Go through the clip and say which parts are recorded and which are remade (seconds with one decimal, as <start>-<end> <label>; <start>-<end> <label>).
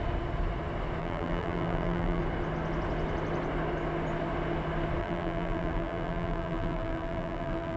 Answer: 0.0-1.0 recorded; 1.0-2.2 remade; 2.2-5.0 recorded; 5.0-7.8 remade